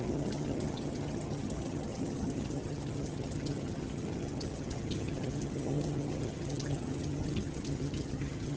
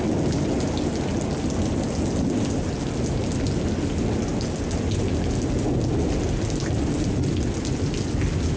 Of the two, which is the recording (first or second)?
second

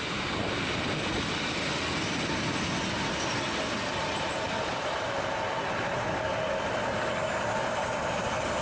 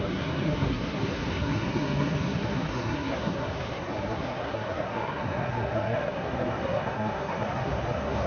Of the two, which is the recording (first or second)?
first